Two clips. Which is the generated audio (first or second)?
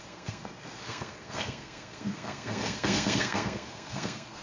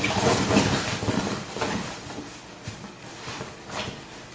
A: first